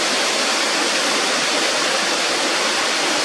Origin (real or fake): real